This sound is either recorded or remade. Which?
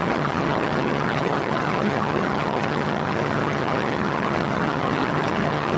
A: remade